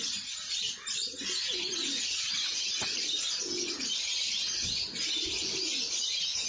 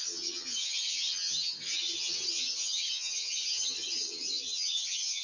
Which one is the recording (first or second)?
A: first